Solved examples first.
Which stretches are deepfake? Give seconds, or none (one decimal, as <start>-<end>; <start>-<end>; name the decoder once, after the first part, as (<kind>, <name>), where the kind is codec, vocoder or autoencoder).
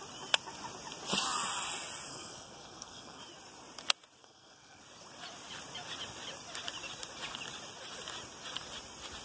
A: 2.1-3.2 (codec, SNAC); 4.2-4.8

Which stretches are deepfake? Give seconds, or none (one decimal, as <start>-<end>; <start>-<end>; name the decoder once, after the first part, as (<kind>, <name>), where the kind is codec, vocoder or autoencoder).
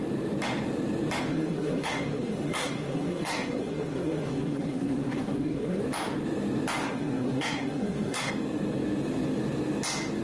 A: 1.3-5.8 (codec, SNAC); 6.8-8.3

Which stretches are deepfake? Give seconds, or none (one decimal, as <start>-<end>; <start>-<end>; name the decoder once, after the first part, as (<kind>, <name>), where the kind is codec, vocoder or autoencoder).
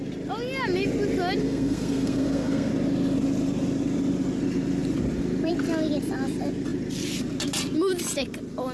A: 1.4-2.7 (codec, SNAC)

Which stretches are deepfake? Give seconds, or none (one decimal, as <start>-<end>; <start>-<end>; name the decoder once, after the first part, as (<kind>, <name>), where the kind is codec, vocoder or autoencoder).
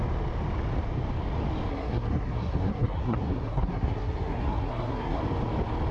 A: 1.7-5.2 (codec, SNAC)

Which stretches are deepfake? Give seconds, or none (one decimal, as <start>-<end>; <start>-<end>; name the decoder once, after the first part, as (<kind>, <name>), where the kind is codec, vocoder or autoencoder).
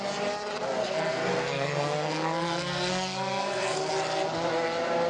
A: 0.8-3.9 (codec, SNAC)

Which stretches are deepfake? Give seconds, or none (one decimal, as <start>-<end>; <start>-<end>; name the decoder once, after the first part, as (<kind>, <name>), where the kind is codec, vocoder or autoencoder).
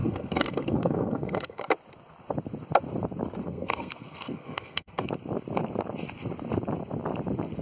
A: 0.0-1.7 (codec, SNAC); 3.4-5.1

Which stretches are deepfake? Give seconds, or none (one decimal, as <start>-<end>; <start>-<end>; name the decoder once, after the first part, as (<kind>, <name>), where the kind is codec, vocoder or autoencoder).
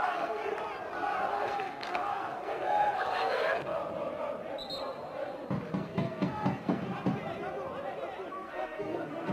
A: 0.0-0.4 (codec, SNAC); 1.3-3.8; 5.7-6.9; 8.3-9.3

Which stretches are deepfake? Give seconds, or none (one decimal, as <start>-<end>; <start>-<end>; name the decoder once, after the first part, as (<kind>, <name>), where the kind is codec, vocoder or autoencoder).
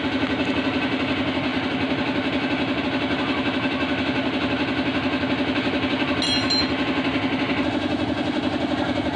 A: none